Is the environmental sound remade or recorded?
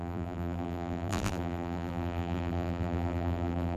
remade